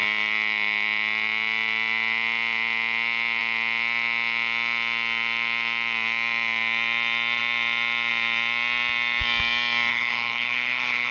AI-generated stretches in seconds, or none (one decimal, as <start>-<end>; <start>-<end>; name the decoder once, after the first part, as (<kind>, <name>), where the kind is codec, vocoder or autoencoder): 9.9-11.1 (codec, HILCodec)